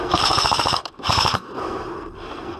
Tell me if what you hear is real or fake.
fake